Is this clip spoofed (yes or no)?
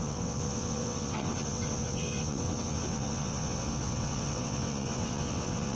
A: yes